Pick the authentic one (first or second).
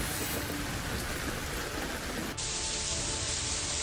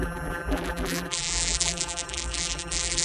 first